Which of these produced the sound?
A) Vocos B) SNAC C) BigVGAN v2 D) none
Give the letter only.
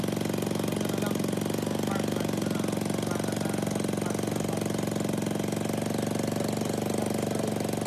D